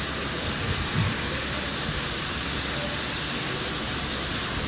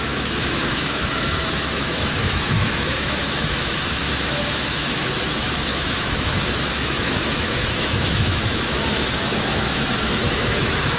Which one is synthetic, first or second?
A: second